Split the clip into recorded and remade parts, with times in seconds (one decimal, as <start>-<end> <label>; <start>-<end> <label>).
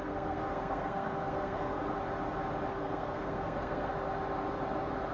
0.0-1.8 remade; 1.8-2.7 recorded; 2.7-3.9 remade; 3.9-5.1 recorded